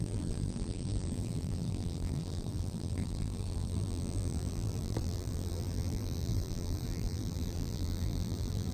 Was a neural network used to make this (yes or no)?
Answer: yes